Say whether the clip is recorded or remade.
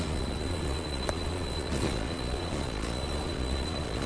remade